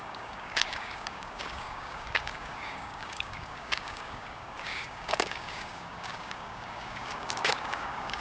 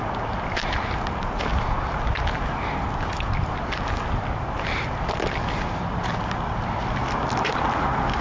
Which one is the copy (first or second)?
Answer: first